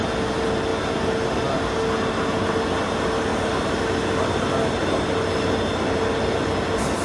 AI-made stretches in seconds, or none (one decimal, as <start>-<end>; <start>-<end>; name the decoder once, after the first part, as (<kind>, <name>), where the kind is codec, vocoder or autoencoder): 3.3-3.8 (vocoder, BigVGAN v2)